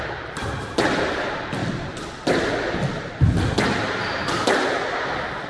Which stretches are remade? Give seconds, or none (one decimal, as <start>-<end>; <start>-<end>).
none